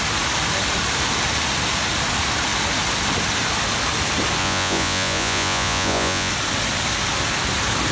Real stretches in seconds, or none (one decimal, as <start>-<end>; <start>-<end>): 0.0-4.4; 6.3-7.9